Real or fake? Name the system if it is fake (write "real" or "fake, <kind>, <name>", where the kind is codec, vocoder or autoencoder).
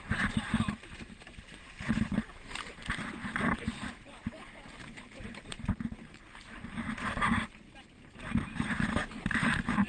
fake, vocoder, BigVGAN v2